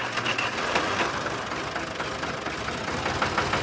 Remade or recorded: recorded